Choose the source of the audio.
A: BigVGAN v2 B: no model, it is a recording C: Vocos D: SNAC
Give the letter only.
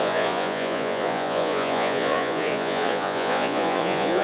C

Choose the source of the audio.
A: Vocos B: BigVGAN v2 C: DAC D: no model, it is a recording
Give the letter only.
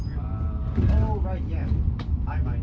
D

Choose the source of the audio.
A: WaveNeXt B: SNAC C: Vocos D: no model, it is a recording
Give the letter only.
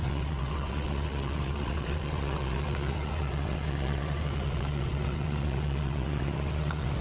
A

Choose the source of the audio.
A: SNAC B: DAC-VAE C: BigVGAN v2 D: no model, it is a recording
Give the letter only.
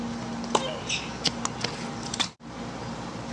D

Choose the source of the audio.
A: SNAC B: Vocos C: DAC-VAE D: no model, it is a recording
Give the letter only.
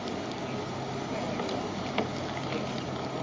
D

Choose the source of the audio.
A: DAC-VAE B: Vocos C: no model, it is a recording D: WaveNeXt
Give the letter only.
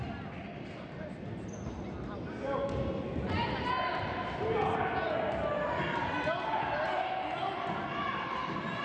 C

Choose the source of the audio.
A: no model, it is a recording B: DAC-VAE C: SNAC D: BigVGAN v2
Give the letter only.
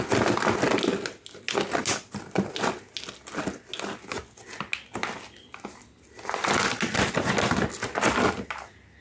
A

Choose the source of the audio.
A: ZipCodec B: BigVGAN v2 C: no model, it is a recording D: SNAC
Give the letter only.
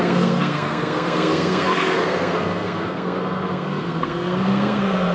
D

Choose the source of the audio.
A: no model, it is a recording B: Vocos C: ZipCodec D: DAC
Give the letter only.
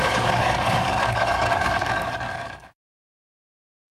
D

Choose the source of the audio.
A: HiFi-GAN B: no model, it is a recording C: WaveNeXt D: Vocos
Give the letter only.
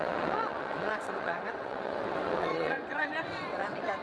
C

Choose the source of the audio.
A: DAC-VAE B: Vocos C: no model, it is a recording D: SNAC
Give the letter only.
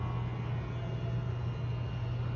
C